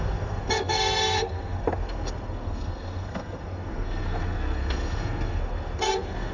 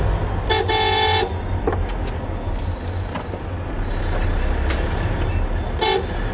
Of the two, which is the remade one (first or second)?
first